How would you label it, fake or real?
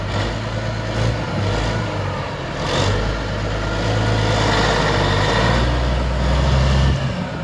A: real